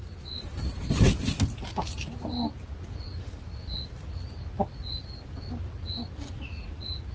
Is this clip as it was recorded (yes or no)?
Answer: yes